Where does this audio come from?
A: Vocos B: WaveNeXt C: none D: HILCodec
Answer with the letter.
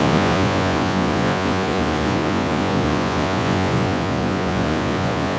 A